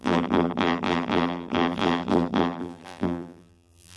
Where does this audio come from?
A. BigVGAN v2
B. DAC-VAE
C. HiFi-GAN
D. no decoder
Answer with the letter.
A